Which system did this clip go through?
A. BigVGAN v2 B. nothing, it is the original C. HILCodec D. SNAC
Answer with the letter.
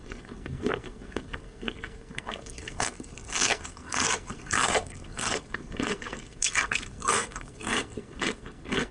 D